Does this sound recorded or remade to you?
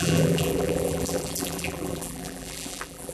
remade